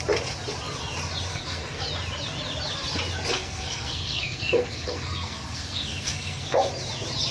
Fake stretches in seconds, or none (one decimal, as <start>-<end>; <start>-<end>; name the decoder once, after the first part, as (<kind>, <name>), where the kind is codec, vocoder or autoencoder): 1.3-1.8 (codec, SNAC); 3.3-6.7